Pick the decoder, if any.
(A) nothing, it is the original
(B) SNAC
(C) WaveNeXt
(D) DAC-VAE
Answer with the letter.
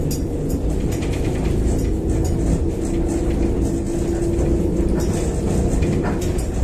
A